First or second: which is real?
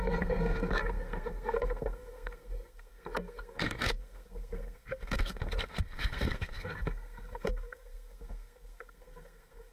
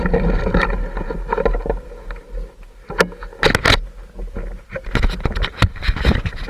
second